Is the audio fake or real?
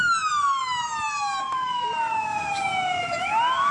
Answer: fake